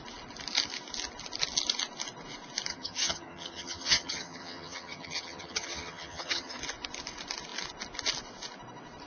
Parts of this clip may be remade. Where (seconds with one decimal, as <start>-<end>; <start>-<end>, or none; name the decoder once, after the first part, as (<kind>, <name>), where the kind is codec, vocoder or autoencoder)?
2.7-6.6 (vocoder, HiFi-GAN)